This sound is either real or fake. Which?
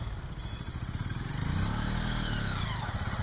real